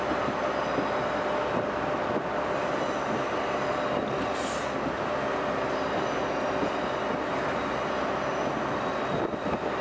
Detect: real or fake real